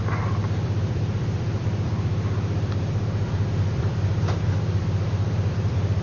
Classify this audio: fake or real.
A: fake